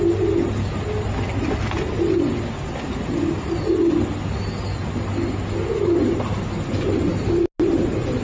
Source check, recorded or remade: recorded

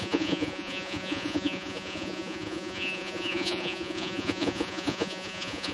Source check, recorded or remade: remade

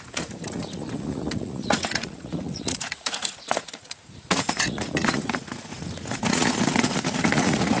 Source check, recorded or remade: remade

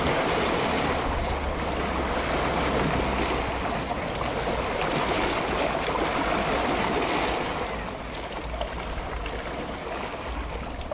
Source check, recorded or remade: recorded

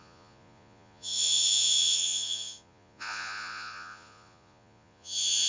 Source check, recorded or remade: remade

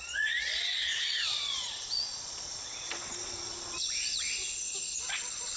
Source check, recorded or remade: remade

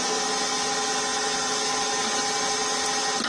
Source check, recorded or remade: recorded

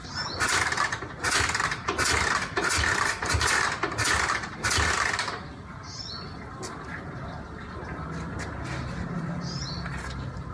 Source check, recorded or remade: recorded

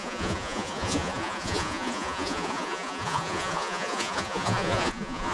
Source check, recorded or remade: remade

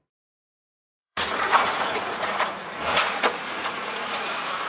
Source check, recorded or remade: remade